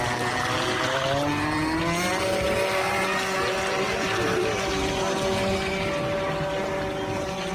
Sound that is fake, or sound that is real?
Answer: real